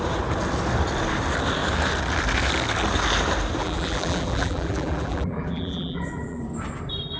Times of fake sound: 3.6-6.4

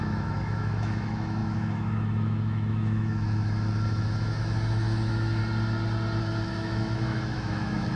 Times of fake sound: 0.0-5.4; 6.2-8.0